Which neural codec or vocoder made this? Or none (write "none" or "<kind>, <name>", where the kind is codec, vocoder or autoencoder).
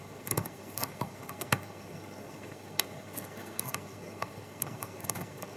codec, SNAC